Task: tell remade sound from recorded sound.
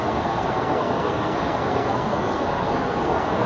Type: remade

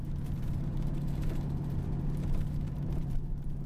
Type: remade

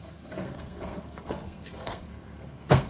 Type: remade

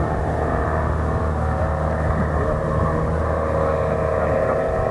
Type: recorded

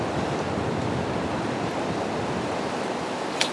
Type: recorded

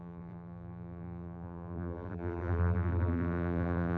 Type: remade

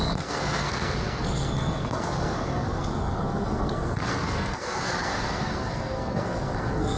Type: remade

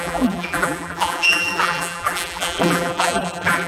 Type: remade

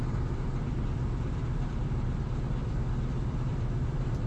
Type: remade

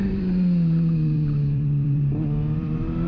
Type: remade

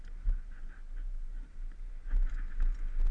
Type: recorded